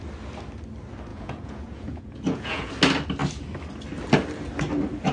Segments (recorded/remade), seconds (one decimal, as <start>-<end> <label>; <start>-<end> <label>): 0.0-1.1 recorded; 1.1-2.7 remade; 2.7-5.1 recorded